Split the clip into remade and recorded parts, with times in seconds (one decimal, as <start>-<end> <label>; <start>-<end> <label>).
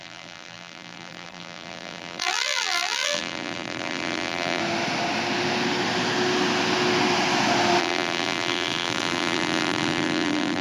0.0-4.6 remade; 4.6-7.8 recorded; 7.8-10.6 remade